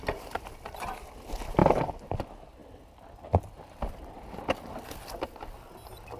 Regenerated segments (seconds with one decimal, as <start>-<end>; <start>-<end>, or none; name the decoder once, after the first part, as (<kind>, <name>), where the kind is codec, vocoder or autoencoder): none